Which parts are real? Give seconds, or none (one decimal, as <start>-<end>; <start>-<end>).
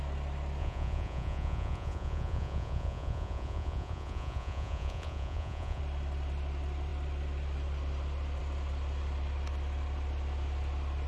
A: 0.0-0.6; 5.8-11.1